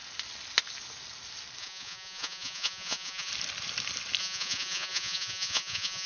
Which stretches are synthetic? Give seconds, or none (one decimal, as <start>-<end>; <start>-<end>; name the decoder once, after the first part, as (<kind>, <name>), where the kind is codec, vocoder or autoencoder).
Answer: 1.6-3.3 (vocoder, Vocos); 4.2-6.1